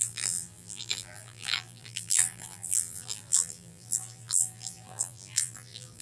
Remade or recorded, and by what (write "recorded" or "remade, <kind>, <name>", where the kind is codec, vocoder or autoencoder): remade, vocoder, BigVGAN v2